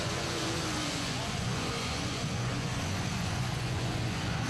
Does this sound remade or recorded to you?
remade